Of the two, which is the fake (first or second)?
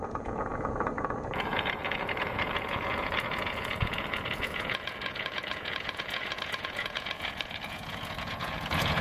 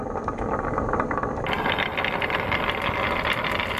first